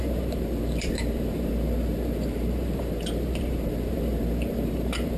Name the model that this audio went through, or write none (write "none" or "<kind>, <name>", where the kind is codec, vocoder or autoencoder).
vocoder, BigVGAN v2